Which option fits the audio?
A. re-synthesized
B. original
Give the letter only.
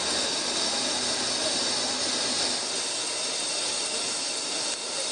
B